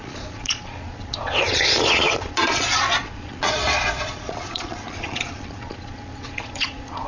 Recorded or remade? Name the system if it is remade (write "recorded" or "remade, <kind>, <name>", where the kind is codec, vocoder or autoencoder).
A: remade, vocoder, Vocos